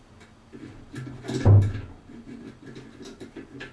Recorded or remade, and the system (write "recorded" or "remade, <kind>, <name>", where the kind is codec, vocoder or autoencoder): recorded